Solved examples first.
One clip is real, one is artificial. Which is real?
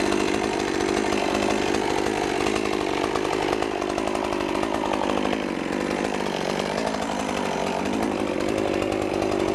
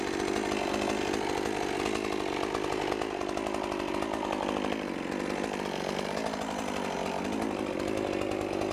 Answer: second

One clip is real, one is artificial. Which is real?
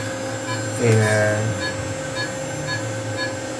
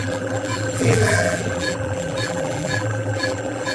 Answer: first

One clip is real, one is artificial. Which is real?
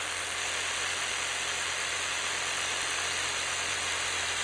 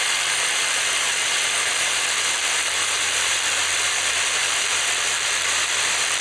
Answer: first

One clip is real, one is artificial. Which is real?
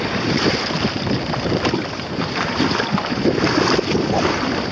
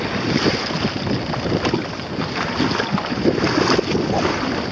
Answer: second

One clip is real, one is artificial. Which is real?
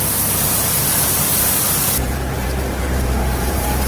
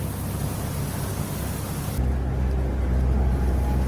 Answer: second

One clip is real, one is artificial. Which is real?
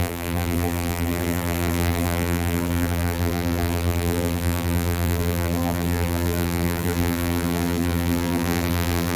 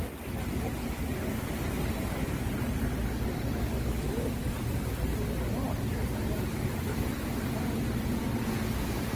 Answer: second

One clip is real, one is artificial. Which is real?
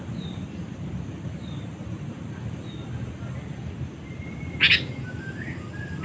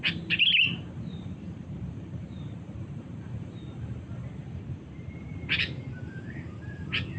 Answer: first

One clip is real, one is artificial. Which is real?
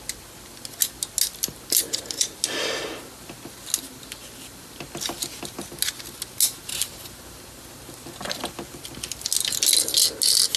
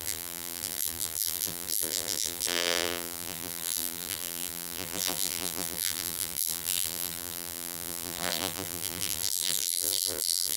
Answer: first